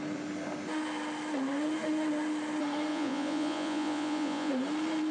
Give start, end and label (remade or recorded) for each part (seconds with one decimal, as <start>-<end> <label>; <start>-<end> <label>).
0.0-2.9 recorded; 2.9-4.5 remade; 4.5-5.1 recorded